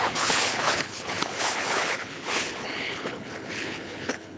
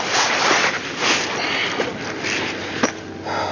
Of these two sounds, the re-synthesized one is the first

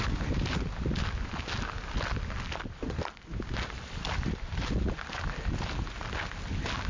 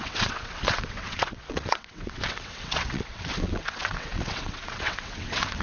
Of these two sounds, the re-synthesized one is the second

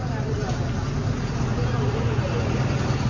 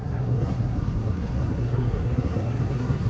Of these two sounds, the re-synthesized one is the second